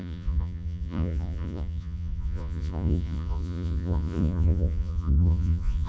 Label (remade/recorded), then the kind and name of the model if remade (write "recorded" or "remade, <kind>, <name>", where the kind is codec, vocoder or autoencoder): remade, vocoder, Vocos